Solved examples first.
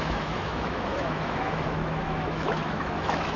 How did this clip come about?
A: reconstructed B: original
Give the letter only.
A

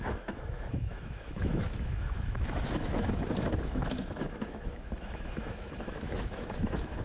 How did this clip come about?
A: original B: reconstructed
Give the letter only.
B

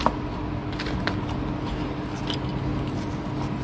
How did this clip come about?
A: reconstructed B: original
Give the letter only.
B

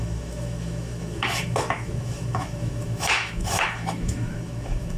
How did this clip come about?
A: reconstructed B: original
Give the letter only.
A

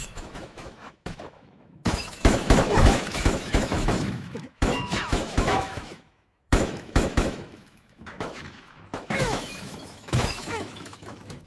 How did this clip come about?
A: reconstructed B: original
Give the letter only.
A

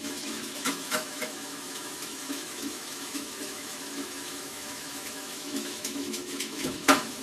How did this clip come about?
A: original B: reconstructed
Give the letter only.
B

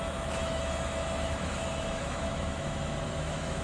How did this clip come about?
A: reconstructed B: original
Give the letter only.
A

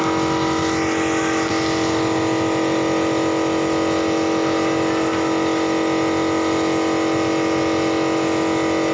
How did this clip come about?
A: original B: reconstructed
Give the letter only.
A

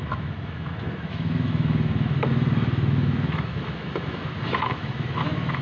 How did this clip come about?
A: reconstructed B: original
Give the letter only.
A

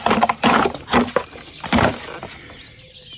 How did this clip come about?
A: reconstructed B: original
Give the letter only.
B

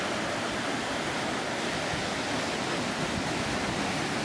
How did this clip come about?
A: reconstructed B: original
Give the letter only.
B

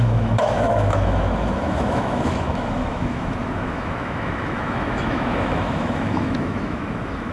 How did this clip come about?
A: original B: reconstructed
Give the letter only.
B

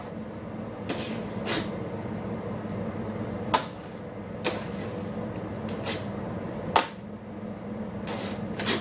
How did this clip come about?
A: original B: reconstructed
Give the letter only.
A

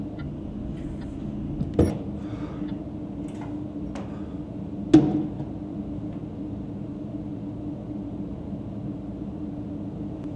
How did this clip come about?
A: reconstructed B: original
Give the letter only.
B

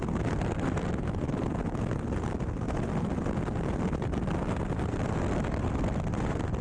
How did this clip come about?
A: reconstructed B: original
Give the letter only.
B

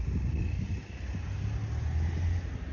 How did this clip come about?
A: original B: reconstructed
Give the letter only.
A